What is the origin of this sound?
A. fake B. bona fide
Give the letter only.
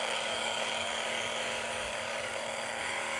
A